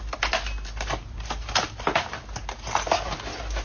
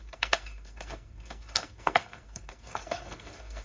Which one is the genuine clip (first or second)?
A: first